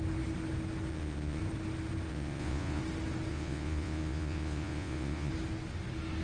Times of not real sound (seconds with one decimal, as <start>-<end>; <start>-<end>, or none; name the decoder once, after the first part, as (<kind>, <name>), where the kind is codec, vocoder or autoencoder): 0.9-1.4 (vocoder, Vocos); 2.1-2.8; 3.3-5.3